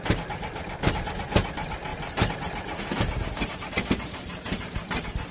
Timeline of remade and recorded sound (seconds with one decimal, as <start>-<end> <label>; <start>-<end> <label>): 0.0-5.3 recorded